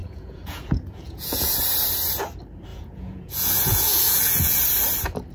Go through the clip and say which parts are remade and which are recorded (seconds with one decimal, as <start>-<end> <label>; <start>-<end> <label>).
0.0-1.6 remade; 1.6-2.7 recorded; 2.7-4.6 remade; 4.6-5.3 recorded